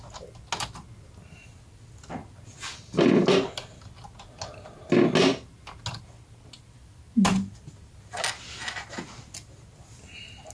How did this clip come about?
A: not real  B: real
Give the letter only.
B